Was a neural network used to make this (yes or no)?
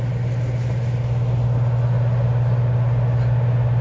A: no